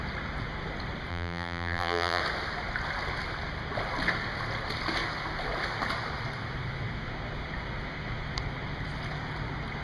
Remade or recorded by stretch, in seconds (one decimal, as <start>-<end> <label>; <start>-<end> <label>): 0.0-1.1 recorded; 1.1-2.2 remade; 2.2-9.8 recorded